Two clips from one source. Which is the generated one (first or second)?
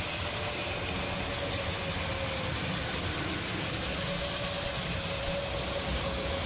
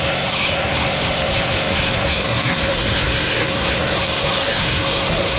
second